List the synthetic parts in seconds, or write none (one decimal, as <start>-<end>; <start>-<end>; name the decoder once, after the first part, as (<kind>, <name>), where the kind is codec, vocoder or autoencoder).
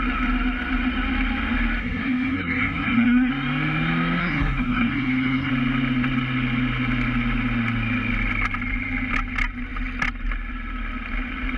1.8-3.3 (codec, SNAC); 4.2-5.5